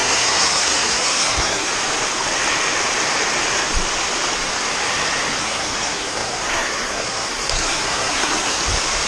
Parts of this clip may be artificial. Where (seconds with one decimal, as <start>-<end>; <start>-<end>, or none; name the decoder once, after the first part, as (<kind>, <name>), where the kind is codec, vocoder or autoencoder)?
0.0-1.7 (codec, SNAC); 5.4-8.6